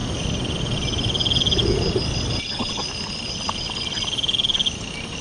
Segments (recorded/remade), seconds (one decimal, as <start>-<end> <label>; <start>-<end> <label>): 0.0-5.2 recorded